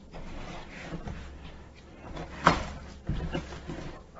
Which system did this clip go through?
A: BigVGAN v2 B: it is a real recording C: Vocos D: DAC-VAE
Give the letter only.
B